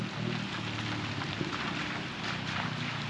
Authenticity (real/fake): real